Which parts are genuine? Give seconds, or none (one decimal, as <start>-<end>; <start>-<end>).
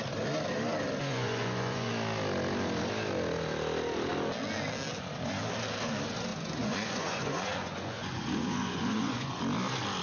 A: 0.0-1.0; 1.9-6.3; 9.4-10.0